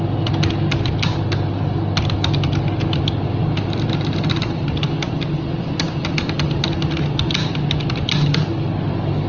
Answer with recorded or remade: recorded